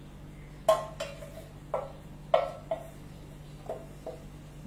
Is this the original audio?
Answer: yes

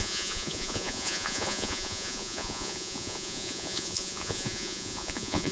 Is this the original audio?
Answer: no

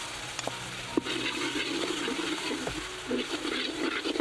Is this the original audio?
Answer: yes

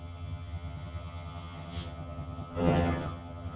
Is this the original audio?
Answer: no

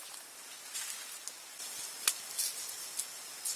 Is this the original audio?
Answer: yes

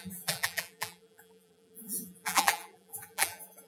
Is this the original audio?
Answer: no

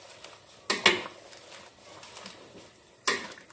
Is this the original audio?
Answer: yes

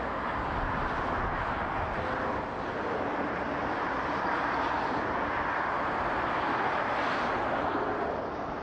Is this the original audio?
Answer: yes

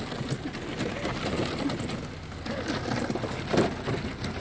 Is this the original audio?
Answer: yes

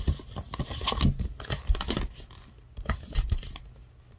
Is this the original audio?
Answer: yes